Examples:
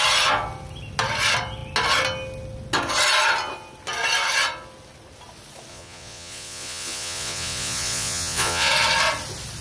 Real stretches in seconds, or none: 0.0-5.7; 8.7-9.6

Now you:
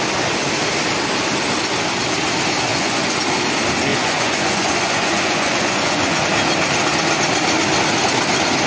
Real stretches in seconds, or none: 0.0-2.7; 3.2-3.9; 6.2-8.7

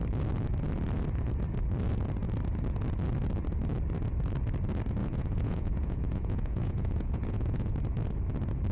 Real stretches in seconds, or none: 0.0-5.0; 7.7-8.7

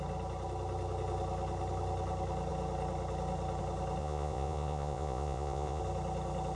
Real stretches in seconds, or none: 0.0-4.0; 5.8-6.6